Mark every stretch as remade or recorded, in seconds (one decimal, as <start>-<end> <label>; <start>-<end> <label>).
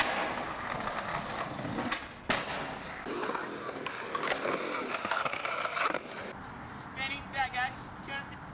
0.0-4.9 recorded; 4.9-5.5 remade; 5.5-8.5 recorded